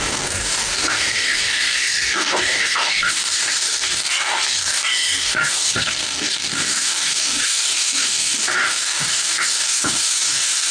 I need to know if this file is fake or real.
fake